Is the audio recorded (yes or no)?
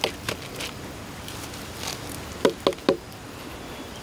yes